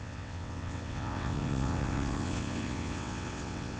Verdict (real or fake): fake